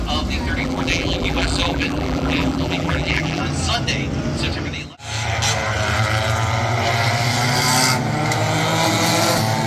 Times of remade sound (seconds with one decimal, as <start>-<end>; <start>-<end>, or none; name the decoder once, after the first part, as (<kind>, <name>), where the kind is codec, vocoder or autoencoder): 0.6-3.4 (vocoder, BigVGAN v2)